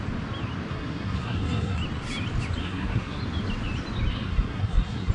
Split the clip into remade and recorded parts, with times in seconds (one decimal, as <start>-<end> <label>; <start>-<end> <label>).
0.0-0.7 recorded; 0.7-1.8 remade; 1.8-2.6 recorded; 2.6-3.2 remade; 3.2-4.1 recorded; 4.1-5.1 remade